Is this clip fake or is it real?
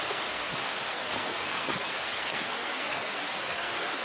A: fake